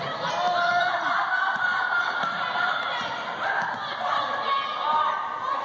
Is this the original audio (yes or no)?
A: yes